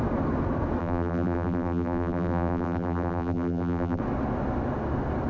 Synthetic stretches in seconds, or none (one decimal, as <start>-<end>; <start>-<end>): 0.8-4.0